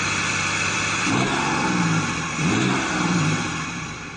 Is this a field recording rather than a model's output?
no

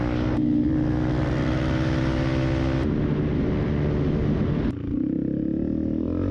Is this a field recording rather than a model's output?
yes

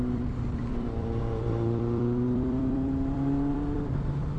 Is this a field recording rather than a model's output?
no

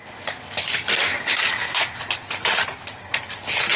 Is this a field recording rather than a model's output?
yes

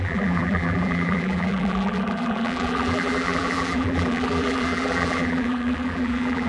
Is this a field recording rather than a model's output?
no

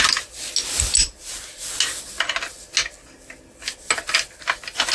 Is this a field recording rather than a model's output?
yes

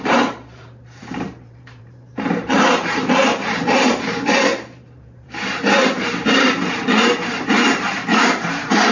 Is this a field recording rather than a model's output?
no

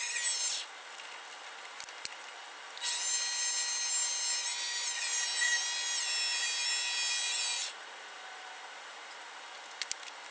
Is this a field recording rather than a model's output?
yes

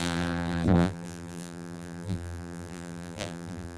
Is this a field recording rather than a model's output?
no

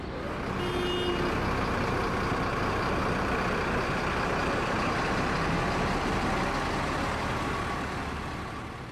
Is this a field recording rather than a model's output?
yes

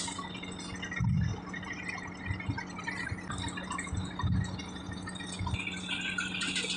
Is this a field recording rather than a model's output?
yes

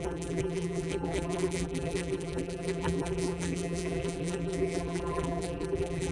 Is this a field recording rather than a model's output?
no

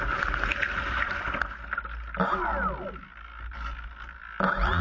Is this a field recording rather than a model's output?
yes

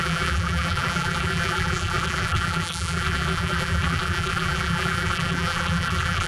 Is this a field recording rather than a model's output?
no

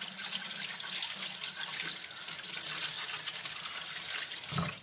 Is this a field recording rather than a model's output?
yes